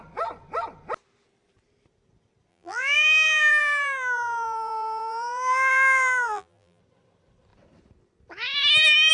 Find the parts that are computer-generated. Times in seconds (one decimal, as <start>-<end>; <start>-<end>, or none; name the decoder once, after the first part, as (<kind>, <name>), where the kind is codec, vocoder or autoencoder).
2.5-6.8 (vocoder, BigVGAN v2)